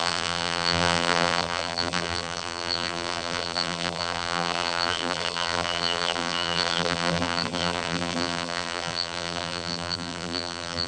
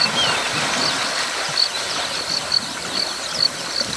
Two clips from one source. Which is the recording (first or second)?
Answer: second